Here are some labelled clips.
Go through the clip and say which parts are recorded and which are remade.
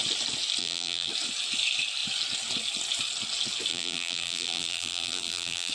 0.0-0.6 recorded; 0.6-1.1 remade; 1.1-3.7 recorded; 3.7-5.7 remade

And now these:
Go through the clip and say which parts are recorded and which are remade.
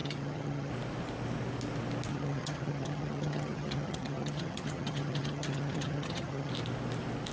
0.0-0.7 remade; 0.7-2.1 recorded; 2.1-6.5 remade; 6.5-7.3 recorded